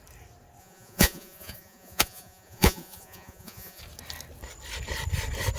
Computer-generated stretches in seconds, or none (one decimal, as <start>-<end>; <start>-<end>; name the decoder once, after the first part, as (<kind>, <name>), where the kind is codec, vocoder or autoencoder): 0.6-3.8 (vocoder, Vocos)